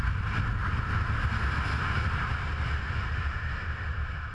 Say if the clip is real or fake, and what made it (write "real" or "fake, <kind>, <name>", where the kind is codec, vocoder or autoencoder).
real